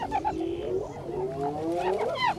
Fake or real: real